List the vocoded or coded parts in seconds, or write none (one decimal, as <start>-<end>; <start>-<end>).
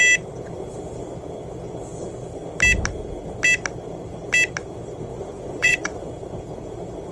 5.1-6.1